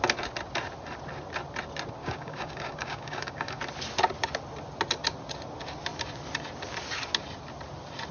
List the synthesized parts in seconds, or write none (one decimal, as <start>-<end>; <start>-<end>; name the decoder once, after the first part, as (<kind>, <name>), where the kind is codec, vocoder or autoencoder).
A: 2.0-3.6 (codec, DAC)